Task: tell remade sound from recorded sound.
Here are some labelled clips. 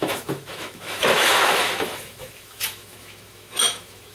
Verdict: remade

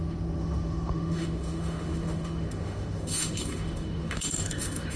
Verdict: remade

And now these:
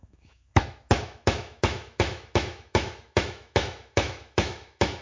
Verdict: remade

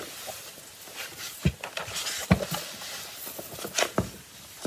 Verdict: recorded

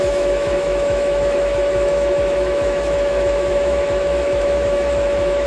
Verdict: remade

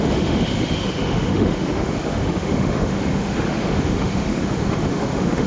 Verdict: remade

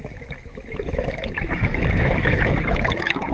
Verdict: remade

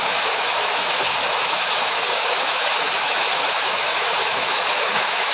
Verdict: remade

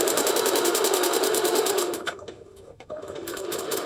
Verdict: remade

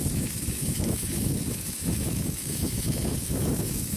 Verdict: remade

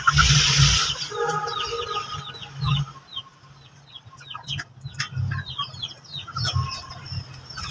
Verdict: recorded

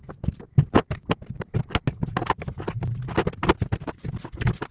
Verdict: recorded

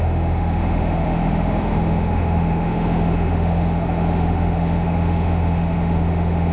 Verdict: remade